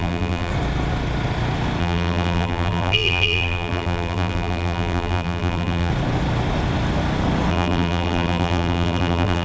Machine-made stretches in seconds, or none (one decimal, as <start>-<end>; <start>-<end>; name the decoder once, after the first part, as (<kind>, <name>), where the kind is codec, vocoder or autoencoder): 0.0-0.5 (vocoder, BigVGAN v2); 1.8-5.9; 7.5-9.4